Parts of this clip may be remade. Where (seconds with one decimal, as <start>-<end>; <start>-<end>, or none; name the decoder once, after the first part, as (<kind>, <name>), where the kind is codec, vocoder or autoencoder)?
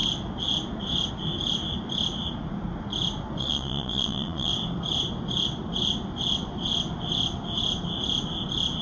3.4-4.5 (vocoder, Vocos)